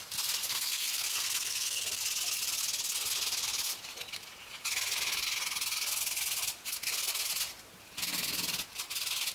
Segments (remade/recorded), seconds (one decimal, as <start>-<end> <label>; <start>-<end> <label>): 0.0-0.4 recorded; 0.4-2.0 remade; 2.0-9.3 recorded